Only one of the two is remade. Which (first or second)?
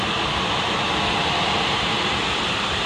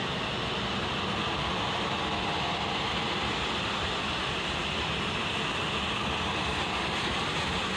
first